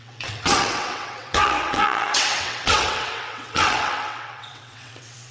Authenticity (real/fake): fake